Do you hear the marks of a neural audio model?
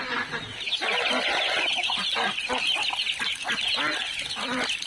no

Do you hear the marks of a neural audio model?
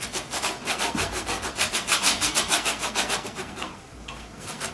yes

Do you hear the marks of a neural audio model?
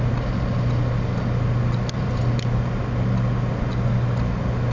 no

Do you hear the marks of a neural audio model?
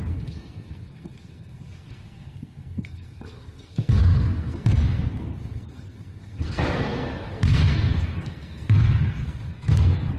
yes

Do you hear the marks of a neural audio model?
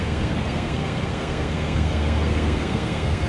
yes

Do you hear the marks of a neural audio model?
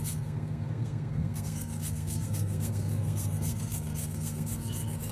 yes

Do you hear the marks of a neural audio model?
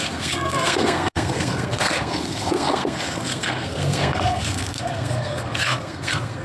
yes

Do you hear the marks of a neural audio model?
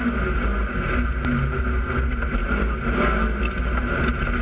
no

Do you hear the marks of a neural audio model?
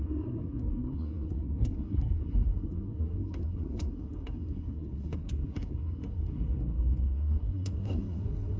yes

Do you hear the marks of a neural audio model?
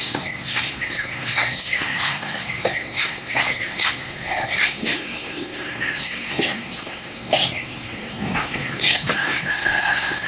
yes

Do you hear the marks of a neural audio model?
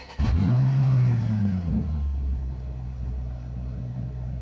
yes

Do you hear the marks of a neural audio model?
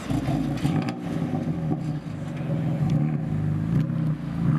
no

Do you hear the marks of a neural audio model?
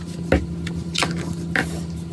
no